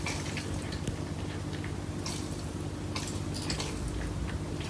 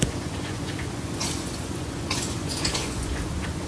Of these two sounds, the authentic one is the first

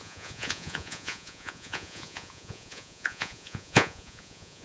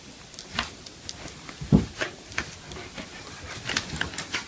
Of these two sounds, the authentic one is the second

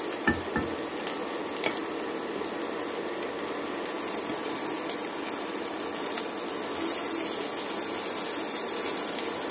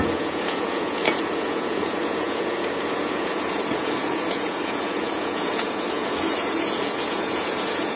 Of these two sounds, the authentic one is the first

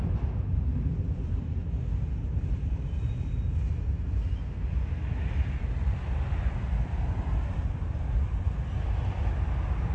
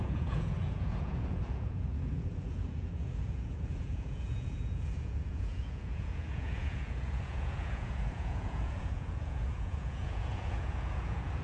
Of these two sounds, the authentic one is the first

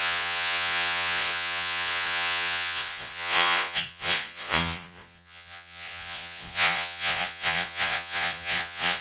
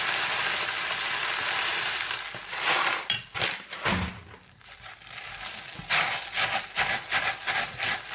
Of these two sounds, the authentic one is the second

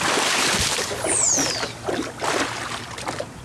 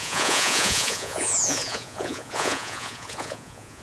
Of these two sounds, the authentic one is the first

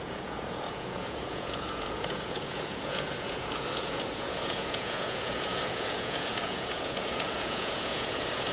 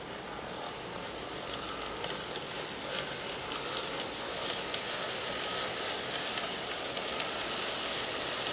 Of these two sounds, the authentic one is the second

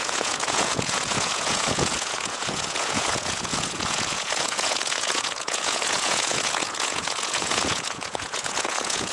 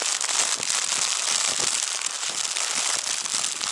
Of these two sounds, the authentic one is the second